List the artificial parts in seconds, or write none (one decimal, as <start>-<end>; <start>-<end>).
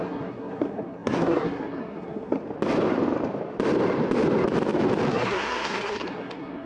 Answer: 0.0-2.4; 5.1-6.7